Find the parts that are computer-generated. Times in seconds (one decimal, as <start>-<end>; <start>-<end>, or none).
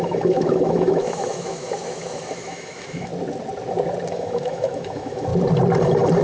0.0-3.1; 4.1-5.3